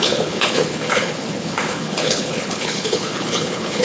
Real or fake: fake